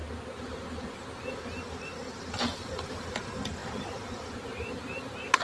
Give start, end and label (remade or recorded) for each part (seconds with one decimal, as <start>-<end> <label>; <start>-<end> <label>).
0.0-5.4 recorded